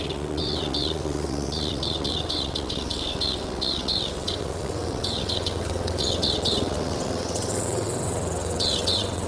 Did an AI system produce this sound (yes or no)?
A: yes